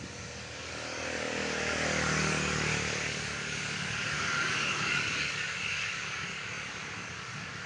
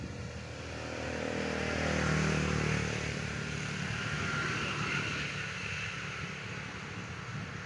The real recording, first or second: second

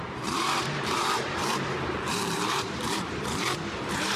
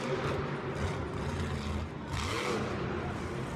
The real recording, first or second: second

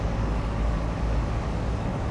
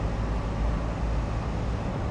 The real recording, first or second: second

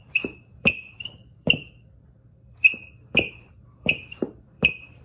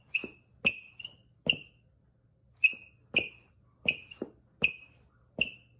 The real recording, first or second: second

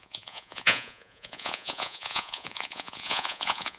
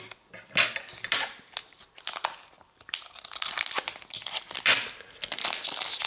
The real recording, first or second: second